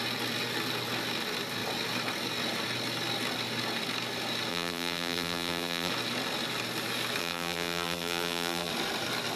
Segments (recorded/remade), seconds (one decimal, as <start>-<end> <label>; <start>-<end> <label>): 0.0-4.5 recorded; 4.5-5.9 remade; 5.9-7.2 recorded; 7.2-8.7 remade; 8.7-9.4 recorded